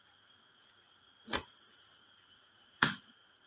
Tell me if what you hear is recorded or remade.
remade